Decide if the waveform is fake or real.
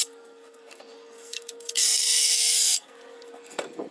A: fake